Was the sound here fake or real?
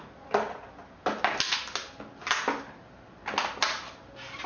real